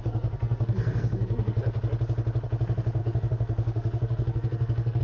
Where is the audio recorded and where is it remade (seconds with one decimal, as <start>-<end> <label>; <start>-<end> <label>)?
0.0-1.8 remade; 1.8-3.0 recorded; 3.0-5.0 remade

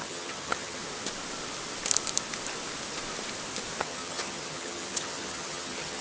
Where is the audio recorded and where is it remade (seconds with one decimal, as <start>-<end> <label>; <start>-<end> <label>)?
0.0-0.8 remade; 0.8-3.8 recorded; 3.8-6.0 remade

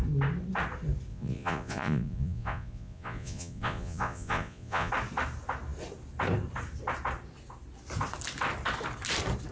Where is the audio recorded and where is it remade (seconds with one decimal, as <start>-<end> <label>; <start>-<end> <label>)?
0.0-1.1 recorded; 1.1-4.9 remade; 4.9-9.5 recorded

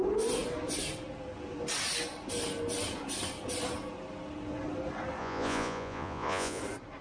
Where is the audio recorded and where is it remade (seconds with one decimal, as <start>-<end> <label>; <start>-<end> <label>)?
0.0-5.2 recorded; 5.2-6.6 remade; 6.6-7.0 recorded

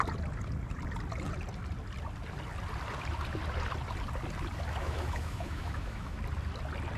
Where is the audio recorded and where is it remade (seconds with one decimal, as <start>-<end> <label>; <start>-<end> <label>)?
0.0-4.8 recorded; 4.8-6.2 remade; 6.2-7.0 recorded

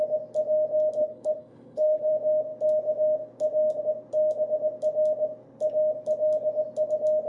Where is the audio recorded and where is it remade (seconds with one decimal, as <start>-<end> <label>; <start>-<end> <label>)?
0.0-1.0 recorded; 1.0-2.1 remade; 2.1-7.3 recorded

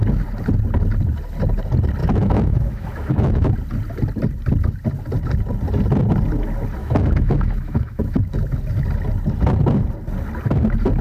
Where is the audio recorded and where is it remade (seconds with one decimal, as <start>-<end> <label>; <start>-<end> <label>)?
0.0-2.0 recorded; 2.0-3.5 remade; 3.5-6.8 recorded; 6.8-8.2 remade; 8.2-11.0 recorded